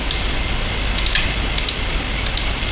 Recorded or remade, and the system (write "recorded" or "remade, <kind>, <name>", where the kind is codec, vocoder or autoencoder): recorded